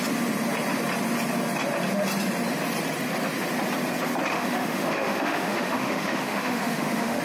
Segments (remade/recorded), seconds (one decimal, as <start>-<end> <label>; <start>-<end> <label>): 0.0-4.3 recorded; 4.3-7.2 remade